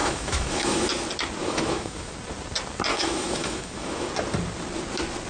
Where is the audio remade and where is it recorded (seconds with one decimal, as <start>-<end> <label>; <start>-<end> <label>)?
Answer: 0.0-0.9 remade; 0.9-1.4 recorded; 1.4-2.1 remade; 2.1-2.9 recorded; 2.9-4.1 remade; 4.1-5.3 recorded